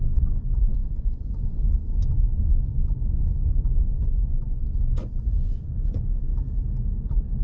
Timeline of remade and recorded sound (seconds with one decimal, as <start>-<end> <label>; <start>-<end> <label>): 0.0-6.3 remade; 6.3-7.0 recorded; 7.0-7.4 remade